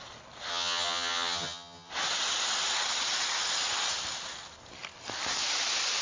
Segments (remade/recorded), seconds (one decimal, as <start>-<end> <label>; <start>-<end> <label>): 0.0-0.5 recorded; 0.5-1.9 remade; 1.9-6.0 recorded